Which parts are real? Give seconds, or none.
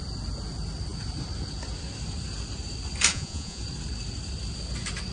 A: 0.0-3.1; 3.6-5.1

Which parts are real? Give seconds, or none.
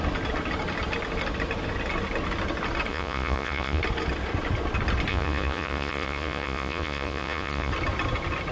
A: 0.0-2.9; 3.8-5.1; 7.7-8.5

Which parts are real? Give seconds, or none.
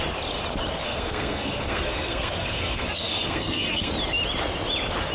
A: 0.0-0.8; 3.9-5.1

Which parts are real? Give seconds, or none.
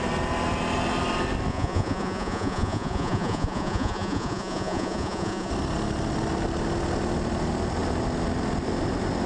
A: 0.0-1.5; 5.5-9.3